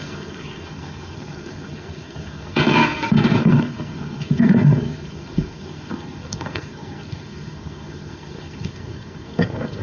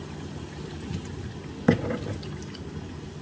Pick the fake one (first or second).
first